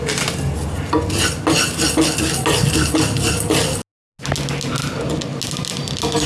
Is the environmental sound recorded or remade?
recorded